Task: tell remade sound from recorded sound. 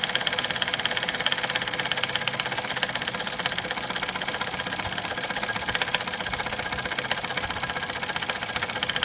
recorded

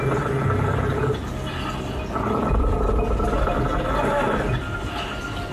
recorded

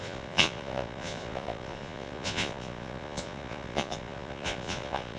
remade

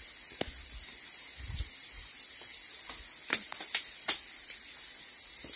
recorded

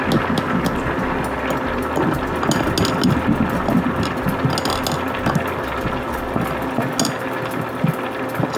recorded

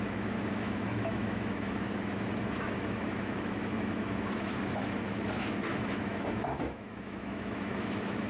remade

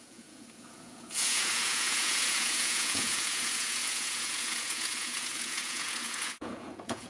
remade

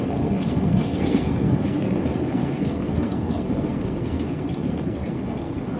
remade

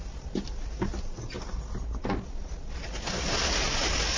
recorded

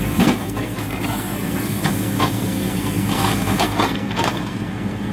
remade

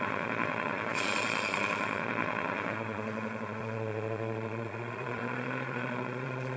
remade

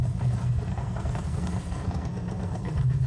remade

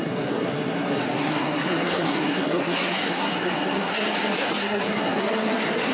remade